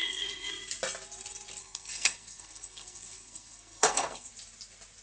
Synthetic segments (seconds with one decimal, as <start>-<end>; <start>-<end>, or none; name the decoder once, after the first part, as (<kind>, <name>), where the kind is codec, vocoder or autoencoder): 0.0-0.5 (codec, SNAC); 1.6-4.3

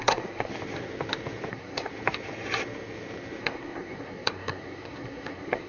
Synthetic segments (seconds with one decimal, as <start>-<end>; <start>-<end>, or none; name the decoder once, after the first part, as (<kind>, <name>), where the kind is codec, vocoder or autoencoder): 0.0-0.5 (codec, SNAC); 1.5-1.9; 3.4-5.7

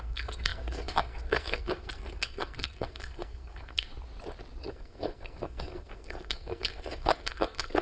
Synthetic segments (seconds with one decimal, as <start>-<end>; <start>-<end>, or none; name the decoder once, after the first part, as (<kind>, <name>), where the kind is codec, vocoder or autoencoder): 0.0-3.9 (codec, SNAC); 4.7-7.8